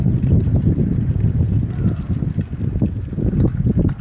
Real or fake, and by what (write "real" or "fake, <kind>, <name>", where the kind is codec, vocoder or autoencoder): real